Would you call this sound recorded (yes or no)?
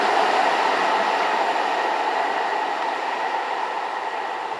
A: yes